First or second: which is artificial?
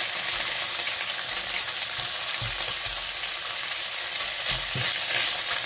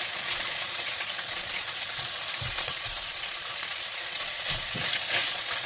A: second